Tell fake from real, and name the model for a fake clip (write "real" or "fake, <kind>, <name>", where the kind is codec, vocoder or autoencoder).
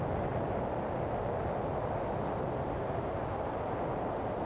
real